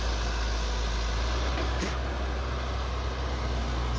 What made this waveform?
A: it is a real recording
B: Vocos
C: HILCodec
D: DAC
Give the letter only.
A